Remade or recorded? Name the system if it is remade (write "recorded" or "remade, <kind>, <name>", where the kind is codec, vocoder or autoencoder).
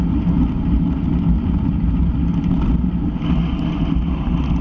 recorded